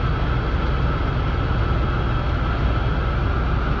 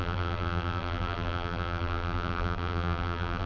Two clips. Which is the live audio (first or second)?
first